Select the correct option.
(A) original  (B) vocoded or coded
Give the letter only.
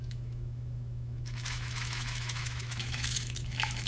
B